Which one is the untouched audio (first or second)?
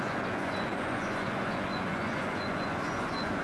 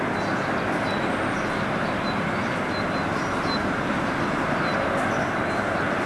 second